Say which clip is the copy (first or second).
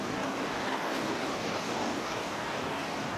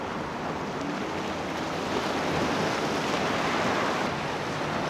first